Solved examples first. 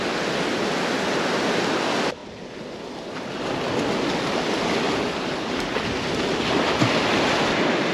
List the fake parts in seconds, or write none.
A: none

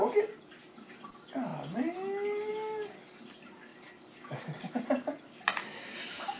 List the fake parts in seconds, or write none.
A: none

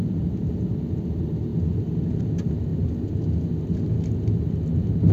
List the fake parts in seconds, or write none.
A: none

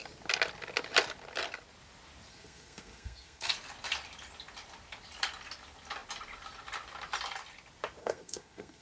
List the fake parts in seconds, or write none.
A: 2.3-3.5 (codec, SNAC); 8.0-8.8

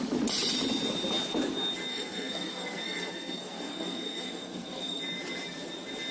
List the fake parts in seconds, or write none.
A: 1.9-5.0 (codec, SNAC)